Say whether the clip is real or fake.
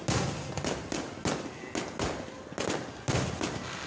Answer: real